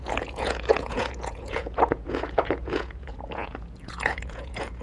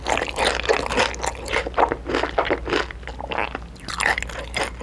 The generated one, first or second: first